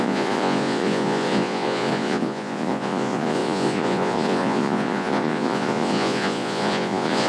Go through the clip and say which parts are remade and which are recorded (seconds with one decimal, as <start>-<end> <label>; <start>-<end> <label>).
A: 0.0-7.3 remade